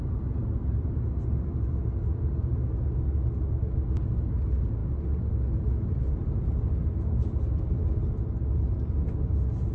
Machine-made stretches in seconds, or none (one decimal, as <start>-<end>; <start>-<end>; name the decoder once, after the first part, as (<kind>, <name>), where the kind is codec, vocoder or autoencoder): none